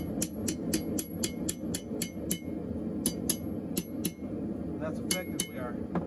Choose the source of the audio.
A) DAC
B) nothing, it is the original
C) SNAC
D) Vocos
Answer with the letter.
B